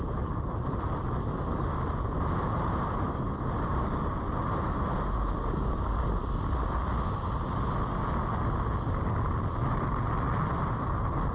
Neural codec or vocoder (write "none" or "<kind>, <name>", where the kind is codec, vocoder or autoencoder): none